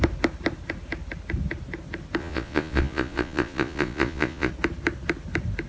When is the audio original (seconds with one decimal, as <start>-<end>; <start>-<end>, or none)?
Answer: 0.0-2.2; 4.5-5.7